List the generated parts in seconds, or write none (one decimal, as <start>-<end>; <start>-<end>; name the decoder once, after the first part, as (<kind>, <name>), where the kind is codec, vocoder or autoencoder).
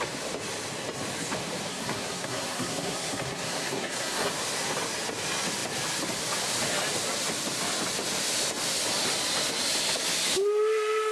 1.7-4.3 (codec, SNAC)